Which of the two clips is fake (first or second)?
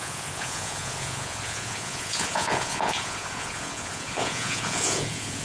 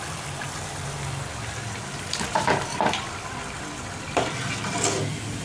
first